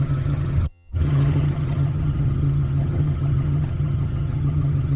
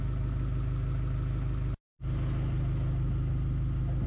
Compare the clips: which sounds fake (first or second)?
first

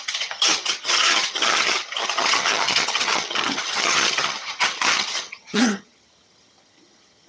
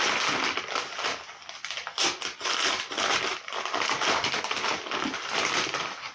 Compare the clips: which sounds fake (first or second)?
first